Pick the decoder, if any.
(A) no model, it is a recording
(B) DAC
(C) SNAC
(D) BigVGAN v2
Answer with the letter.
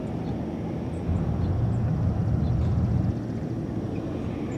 A